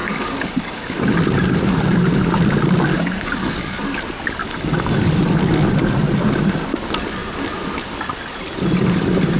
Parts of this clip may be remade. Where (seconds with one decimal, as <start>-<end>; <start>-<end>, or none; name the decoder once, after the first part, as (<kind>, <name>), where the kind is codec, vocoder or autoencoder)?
0.0-1.0 (codec, DAC); 2.9-3.9; 4.4-5.2